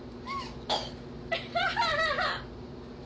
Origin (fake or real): real